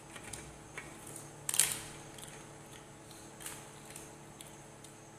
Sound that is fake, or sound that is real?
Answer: real